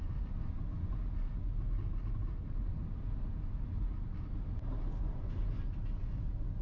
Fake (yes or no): no